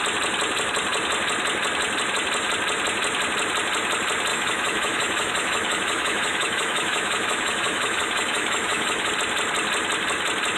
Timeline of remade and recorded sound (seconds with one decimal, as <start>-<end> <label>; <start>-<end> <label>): 0.0-4.3 recorded; 4.3-9.1 remade; 9.1-10.6 recorded